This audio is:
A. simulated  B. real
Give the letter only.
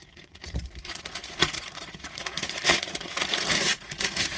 A